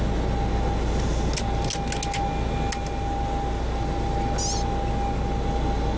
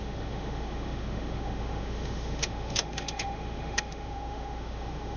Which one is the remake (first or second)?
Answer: second